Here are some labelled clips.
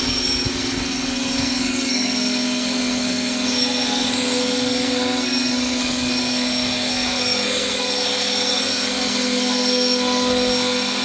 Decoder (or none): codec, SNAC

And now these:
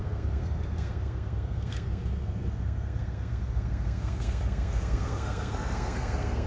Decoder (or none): codec, SNAC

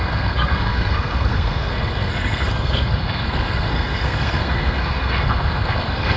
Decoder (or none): codec, SNAC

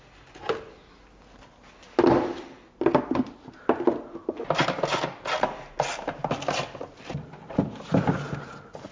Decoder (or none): none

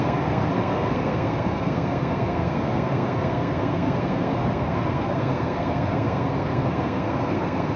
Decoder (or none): codec, SNAC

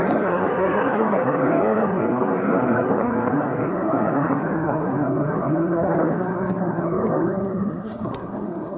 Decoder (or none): codec, SNAC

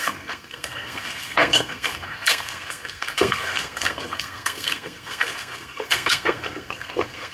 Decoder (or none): codec, SNAC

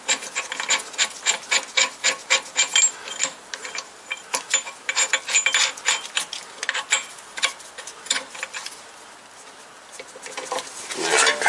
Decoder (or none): none